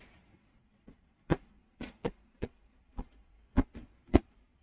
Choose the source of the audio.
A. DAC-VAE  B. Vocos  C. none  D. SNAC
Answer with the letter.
B